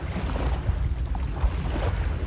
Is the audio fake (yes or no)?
no